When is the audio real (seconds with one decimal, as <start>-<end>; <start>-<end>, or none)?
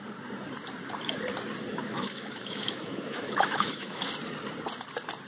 0.0-1.7; 4.1-5.3